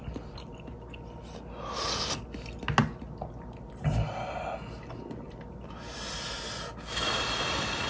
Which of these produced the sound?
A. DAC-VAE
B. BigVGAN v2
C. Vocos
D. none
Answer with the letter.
D